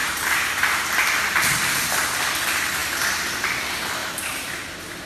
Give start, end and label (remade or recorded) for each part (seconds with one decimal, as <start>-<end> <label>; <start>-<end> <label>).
0.0-0.8 remade; 0.8-4.0 recorded; 4.0-5.1 remade